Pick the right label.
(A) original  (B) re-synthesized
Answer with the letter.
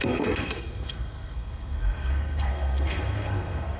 B